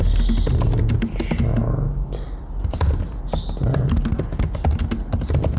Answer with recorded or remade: recorded